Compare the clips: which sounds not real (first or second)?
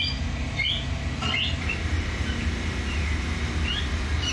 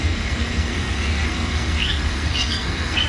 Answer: second